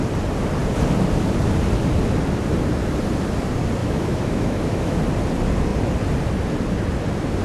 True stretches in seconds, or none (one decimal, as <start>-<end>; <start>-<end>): 0.0-3.8; 5.0-7.4